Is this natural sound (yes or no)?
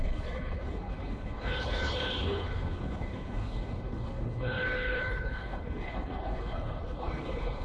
no